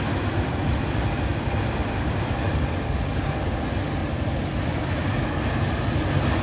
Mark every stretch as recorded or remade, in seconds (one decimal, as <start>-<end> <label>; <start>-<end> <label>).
0.0-1.3 recorded; 1.3-2.5 remade; 2.5-4.0 recorded; 4.0-5.4 remade; 5.4-6.4 recorded